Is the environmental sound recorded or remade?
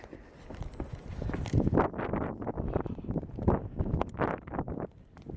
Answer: recorded